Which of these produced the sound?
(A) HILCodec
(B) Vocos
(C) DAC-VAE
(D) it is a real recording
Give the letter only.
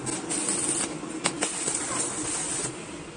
D